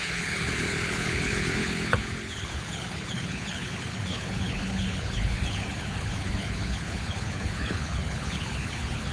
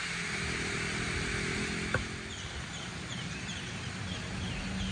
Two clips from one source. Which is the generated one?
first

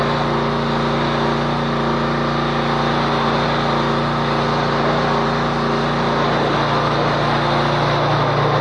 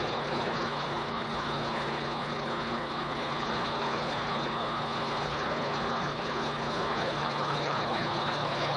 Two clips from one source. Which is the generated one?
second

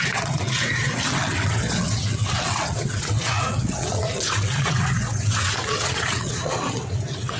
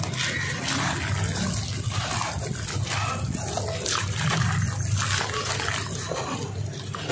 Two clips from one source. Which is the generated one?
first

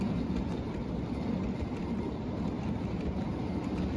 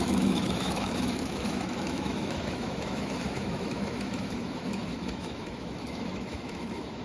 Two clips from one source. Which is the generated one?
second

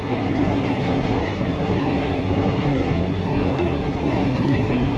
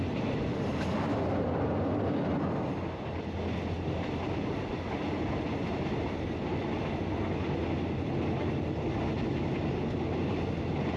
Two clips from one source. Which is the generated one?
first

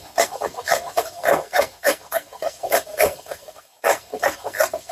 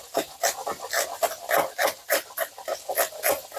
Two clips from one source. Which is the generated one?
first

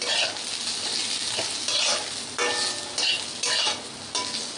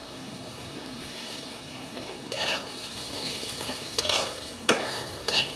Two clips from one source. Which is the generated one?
second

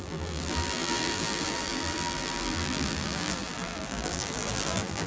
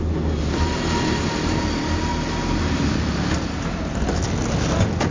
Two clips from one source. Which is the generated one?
first